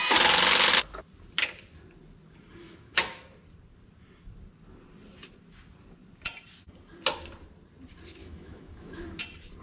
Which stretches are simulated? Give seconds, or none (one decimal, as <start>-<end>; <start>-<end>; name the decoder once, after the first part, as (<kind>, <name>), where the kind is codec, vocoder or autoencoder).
2.6-3.2 (autoencoder, DAC-VAE); 8.2-9.2